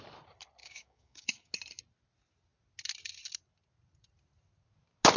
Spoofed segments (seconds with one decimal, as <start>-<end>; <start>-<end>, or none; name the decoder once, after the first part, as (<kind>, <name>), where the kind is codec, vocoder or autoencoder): 0.6-1.5 (codec, DAC)

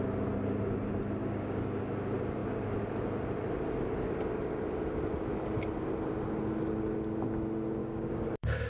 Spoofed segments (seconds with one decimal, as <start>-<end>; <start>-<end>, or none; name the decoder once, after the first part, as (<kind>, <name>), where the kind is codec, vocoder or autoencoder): 1.2-1.8 (codec, DAC); 7.8-8.7

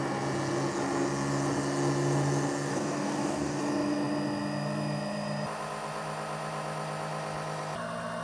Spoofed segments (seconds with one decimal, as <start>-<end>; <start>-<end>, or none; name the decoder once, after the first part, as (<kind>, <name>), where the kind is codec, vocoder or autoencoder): 2.7-3.6 (codec, DAC)

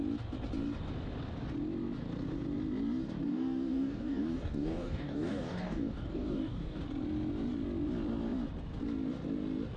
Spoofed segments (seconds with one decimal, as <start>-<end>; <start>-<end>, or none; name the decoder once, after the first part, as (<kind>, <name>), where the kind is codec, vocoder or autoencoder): 3.3-6.8 (codec, DAC)

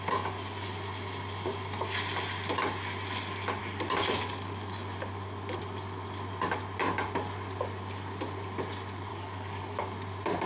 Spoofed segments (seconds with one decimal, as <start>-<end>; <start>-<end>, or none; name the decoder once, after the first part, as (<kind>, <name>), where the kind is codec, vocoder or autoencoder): 9.1-9.8 (codec, DAC)

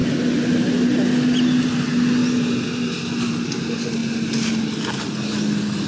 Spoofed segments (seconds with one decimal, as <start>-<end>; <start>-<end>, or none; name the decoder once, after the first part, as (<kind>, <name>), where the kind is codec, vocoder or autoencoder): none